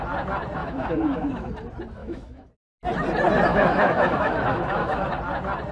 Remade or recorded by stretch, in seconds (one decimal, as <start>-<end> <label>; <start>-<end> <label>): 0.0-0.6 recorded; 0.6-1.5 remade; 1.5-2.0 recorded; 2.0-2.5 remade; 2.5-3.5 recorded; 3.5-5.1 remade; 5.1-5.7 recorded